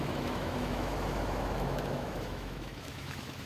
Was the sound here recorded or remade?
remade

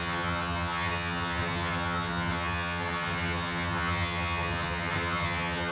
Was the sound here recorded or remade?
remade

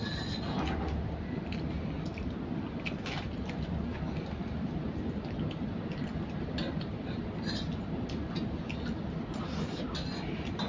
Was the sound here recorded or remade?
recorded